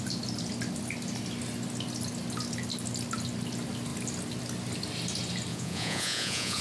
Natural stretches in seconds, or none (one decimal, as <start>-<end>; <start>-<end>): 0.0-5.5